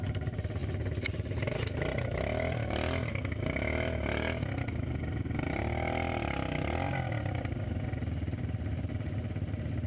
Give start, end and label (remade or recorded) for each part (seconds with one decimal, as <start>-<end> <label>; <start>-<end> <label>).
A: 0.0-9.9 recorded